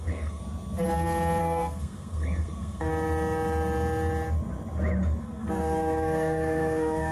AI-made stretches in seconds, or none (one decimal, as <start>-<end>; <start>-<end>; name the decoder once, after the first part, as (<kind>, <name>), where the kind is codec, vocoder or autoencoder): 0.0-0.4 (codec, SNAC); 1.4-2.9; 5.2-7.1